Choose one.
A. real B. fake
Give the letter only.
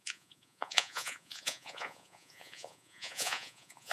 B